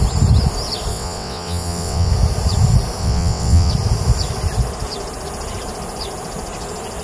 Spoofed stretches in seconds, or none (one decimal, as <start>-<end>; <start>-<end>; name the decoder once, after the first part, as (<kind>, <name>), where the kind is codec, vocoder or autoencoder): 0.9-2.1 (vocoder, WaveNeXt); 3.0-3.7